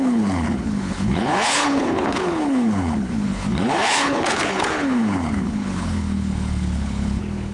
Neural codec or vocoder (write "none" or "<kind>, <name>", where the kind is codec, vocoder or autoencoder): codec, HILCodec